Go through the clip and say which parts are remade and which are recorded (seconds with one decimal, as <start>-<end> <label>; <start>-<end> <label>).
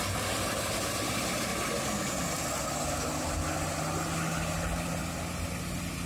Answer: 0.0-1.5 recorded; 1.5-2.1 remade; 2.1-6.1 recorded